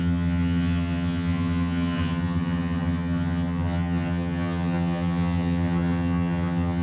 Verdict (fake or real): fake